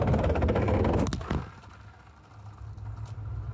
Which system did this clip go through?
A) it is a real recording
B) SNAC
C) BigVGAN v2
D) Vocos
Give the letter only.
A